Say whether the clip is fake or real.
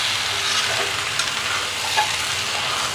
real